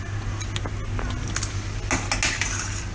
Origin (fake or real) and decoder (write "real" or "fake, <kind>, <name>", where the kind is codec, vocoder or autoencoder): real